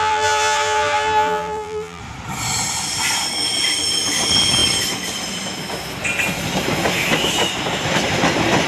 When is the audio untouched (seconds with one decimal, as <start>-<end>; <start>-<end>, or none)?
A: 2.0-8.7